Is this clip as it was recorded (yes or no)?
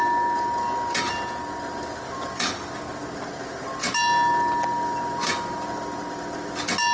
yes